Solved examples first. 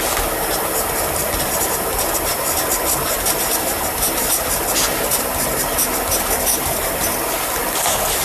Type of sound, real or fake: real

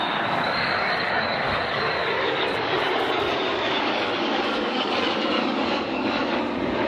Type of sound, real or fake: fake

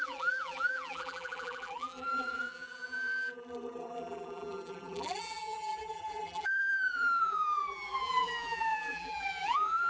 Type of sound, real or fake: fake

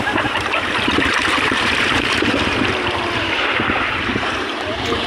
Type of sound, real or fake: fake